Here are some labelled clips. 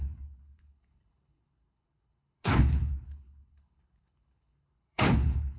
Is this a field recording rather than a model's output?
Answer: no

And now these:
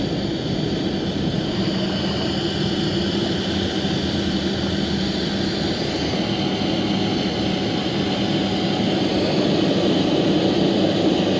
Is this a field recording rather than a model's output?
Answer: yes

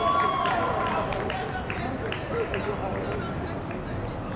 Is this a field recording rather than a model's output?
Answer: yes